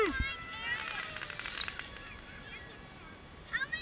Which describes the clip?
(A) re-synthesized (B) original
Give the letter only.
B